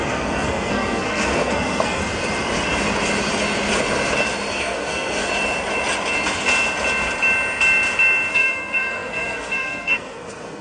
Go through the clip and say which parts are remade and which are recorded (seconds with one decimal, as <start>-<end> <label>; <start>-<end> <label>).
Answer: 0.0-2.0 remade; 2.0-4.5 recorded; 4.5-5.3 remade; 5.3-8.3 recorded; 8.3-10.6 remade